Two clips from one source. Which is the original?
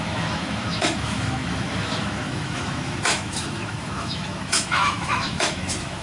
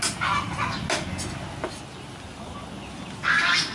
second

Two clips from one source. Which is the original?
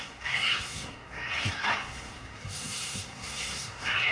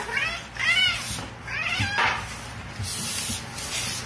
second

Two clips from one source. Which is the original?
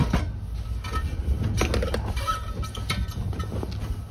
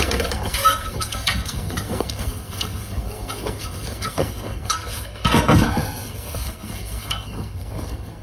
first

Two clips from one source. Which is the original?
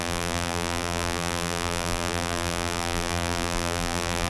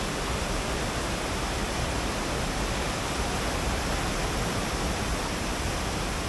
second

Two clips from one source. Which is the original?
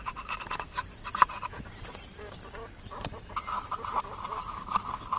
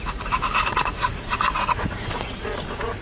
first